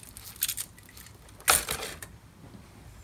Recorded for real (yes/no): yes